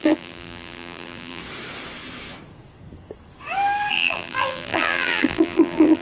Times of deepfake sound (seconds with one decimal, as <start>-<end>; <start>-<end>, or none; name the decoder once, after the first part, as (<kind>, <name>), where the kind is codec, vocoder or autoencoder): 0.0-1.4 (vocoder, BigVGAN v2); 3.9-6.0

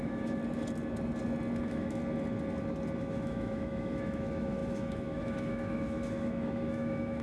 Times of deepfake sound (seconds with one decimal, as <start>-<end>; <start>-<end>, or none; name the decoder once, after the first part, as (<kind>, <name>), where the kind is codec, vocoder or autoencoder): 0.0-0.4 (autoencoder, DAC-VAE); 1.6-2.0; 3.0-7.2

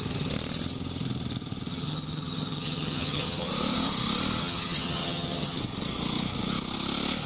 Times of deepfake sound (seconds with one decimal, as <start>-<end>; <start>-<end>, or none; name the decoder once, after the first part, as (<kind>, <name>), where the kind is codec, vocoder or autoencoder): 1.7-3.5 (vocoder, HiFi-GAN); 4.4-5.6

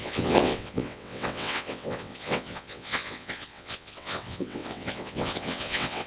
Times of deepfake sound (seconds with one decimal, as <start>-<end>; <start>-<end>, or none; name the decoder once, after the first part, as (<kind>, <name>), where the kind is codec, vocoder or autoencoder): 0.0-6.1 (vocoder, WaveNeXt)

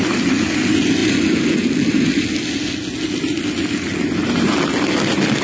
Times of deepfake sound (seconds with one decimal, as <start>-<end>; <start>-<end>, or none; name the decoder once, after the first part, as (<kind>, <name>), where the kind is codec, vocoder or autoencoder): none

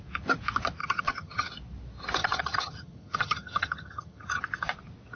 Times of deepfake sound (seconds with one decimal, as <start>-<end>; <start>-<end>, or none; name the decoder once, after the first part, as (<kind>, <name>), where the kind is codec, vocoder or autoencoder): 0.8-1.5 (vocoder, HiFi-GAN); 2.2-4.4